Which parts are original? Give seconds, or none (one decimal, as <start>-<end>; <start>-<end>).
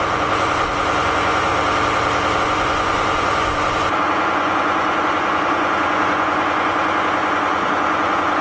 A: 1.5-2.4